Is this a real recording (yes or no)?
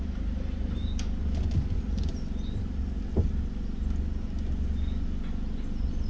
yes